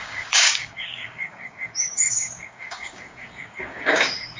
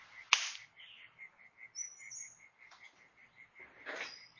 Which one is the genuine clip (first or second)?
second